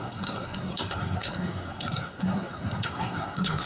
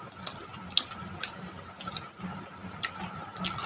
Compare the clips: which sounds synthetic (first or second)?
first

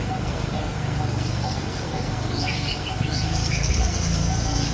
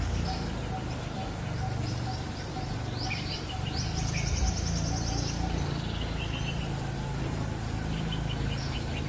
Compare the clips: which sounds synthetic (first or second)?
first